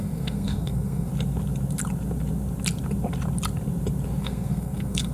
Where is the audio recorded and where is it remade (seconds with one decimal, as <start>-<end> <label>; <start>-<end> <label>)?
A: 0.0-1.1 remade; 1.1-4.2 recorded; 4.2-5.1 remade